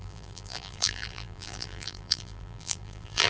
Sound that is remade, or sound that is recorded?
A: remade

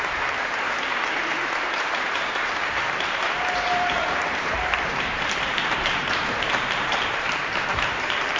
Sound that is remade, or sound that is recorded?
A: remade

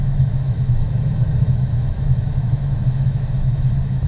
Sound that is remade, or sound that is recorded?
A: remade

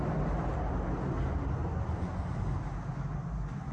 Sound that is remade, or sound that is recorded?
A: recorded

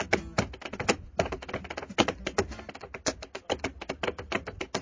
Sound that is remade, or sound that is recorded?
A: recorded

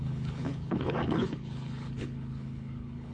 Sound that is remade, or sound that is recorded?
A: remade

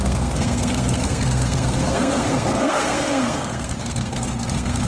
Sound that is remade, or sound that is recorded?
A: remade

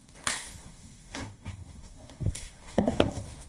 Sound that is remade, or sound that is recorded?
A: remade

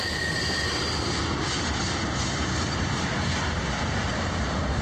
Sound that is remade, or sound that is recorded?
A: recorded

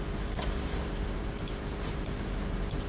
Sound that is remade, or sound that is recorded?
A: recorded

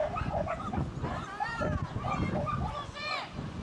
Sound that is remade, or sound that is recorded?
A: remade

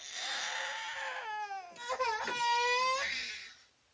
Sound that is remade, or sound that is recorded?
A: recorded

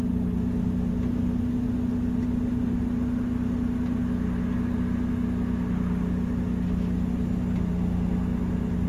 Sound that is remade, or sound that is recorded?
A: recorded